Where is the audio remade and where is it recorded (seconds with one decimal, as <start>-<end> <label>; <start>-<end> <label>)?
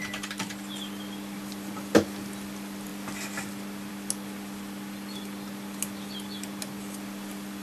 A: 0.0-7.6 recorded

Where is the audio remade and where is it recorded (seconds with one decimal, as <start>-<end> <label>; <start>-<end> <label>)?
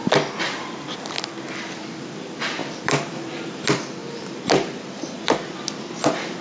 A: 0.0-4.0 remade; 4.0-6.4 recorded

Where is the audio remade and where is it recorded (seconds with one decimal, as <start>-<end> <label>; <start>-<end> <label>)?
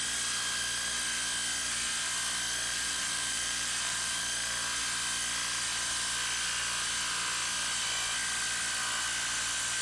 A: 0.0-2.7 recorded; 2.7-4.2 remade; 4.2-9.8 recorded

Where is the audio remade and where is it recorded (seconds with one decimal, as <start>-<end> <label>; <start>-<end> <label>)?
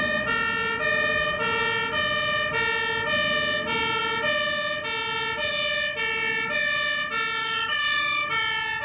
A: 0.0-7.4 recorded; 7.4-8.4 remade; 8.4-8.8 recorded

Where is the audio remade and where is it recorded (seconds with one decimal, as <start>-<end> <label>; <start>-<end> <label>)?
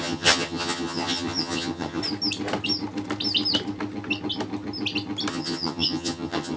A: 0.0-2.0 remade; 2.0-5.3 recorded; 5.3-6.6 remade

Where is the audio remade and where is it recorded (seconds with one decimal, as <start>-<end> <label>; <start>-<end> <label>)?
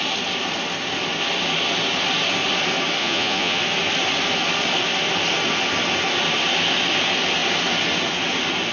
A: 0.0-3.0 recorded; 3.0-3.6 remade; 3.6-8.7 recorded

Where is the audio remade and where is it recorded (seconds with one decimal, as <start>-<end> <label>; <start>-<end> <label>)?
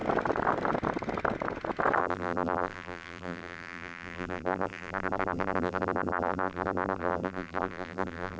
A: 0.0-2.0 recorded; 2.0-8.4 remade